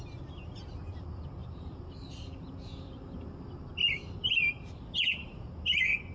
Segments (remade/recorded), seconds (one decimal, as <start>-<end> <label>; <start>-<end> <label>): 0.0-6.1 recorded